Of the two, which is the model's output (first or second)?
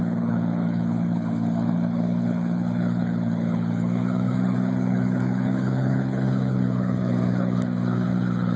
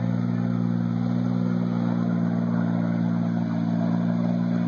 first